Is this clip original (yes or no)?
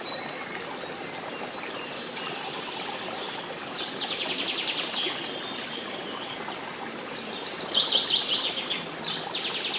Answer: yes